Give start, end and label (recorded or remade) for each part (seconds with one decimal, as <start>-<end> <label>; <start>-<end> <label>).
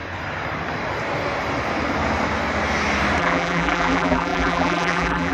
0.0-3.2 recorded; 3.2-5.3 remade